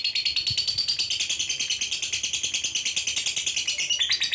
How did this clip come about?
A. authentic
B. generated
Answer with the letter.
A